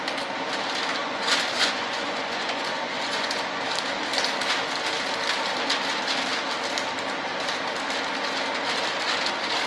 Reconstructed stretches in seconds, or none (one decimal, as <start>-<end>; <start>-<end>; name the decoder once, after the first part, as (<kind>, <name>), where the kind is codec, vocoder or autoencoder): 1.0-3.6 (vocoder, Vocos)